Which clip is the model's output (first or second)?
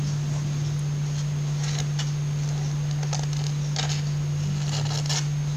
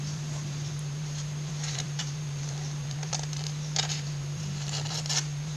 second